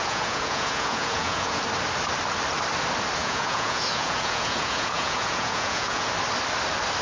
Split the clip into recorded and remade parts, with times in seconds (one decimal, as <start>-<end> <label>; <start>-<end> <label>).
0.0-1.6 remade; 1.6-3.2 recorded; 3.2-6.1 remade; 6.1-7.0 recorded